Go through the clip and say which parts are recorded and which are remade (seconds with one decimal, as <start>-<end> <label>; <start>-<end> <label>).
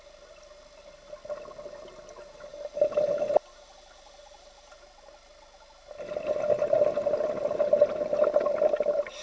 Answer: 0.0-9.2 recorded